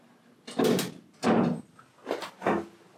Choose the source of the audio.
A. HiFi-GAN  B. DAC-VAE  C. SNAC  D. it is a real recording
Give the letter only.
D